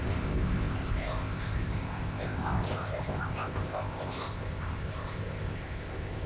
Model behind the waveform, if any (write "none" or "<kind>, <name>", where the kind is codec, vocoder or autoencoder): codec, ZipCodec